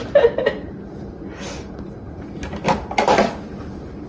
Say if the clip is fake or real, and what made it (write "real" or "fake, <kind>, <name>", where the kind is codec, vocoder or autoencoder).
real